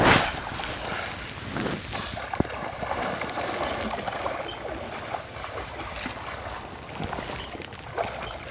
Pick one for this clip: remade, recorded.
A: recorded